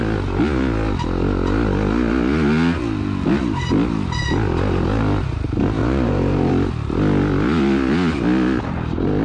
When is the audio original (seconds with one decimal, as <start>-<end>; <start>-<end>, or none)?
0.0-5.8; 6.5-9.2